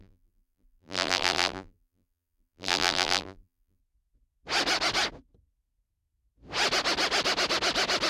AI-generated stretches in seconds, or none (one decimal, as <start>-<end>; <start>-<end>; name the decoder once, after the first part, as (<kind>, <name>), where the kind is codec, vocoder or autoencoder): 0.0-3.8 (vocoder, BigVGAN v2)